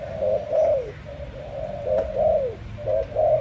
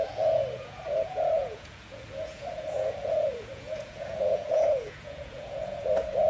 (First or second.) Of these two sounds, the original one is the first